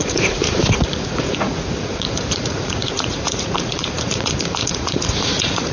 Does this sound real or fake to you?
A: fake